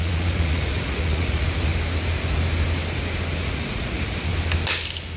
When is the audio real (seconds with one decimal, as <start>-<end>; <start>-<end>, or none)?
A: 1.7-3.4; 4.3-5.2